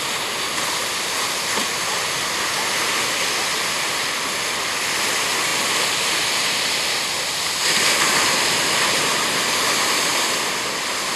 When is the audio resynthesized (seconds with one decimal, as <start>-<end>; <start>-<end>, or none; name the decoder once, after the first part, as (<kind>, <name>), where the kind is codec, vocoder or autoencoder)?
none